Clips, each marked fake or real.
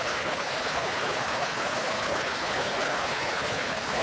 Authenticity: fake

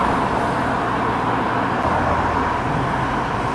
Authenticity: real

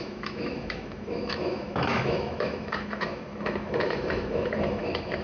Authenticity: fake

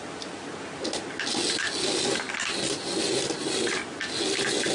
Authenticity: real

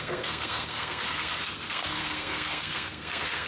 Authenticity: fake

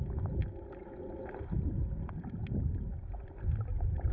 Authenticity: real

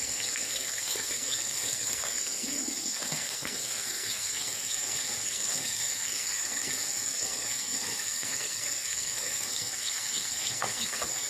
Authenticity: fake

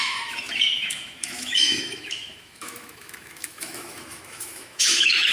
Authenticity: fake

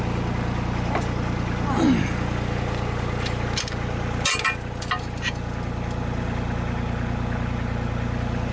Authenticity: real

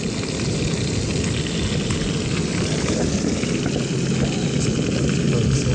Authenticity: real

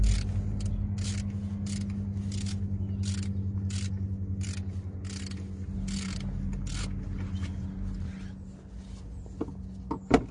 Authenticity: real